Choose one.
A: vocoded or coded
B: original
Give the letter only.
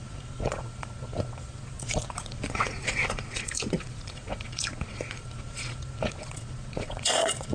A